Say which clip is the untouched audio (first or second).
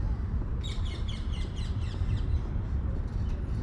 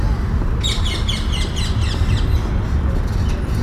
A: second